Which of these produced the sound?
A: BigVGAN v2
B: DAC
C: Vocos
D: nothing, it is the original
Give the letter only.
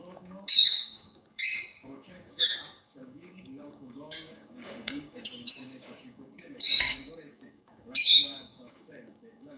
B